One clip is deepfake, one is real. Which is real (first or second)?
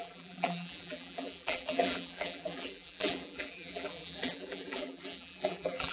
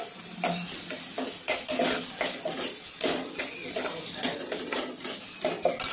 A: second